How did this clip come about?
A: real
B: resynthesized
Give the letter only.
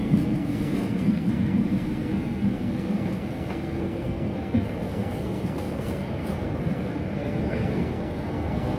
B